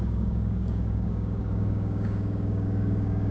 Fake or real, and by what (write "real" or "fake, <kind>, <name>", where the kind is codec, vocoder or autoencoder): fake, codec, DAC